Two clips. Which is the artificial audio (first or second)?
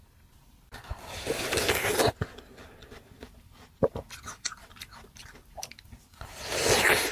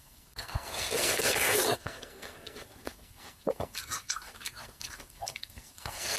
second